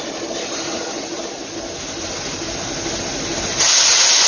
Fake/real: real